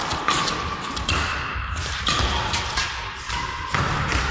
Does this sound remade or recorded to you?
recorded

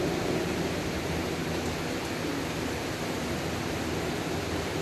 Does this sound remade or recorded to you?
recorded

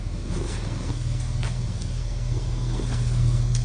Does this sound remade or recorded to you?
remade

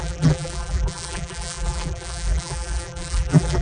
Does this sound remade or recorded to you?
remade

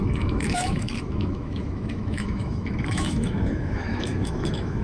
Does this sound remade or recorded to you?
remade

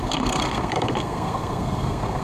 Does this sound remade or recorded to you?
remade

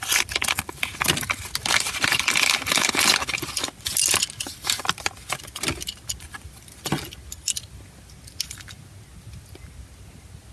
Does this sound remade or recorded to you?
recorded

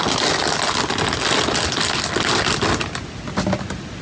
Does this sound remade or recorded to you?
recorded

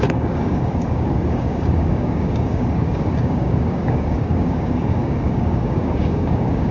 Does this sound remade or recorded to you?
remade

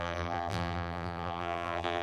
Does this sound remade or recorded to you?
remade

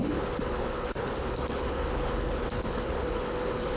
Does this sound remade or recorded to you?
remade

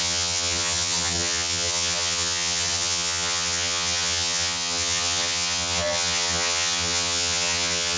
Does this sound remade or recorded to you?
remade